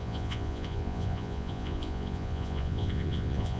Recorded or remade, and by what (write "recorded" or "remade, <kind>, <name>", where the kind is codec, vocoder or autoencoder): remade, vocoder, Vocos